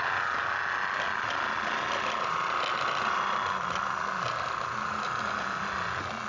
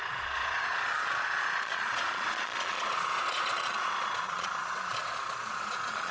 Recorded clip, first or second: first